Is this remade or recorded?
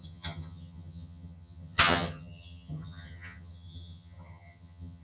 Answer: remade